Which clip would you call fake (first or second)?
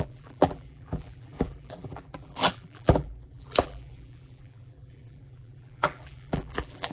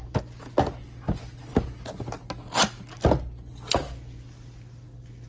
first